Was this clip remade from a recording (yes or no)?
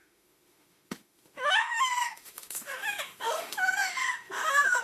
yes